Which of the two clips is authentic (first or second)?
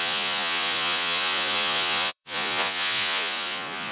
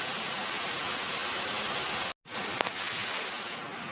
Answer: second